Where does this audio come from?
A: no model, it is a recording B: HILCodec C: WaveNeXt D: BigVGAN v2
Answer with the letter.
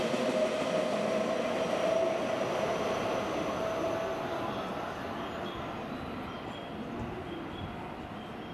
A